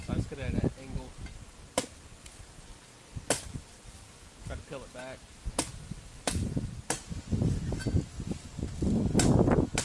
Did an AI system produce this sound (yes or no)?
no